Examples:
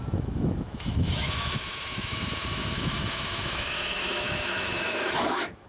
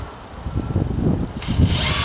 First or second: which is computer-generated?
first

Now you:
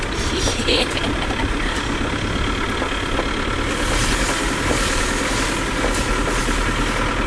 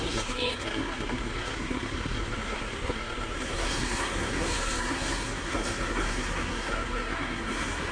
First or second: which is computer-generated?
second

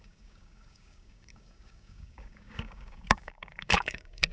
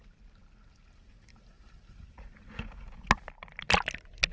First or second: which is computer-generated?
first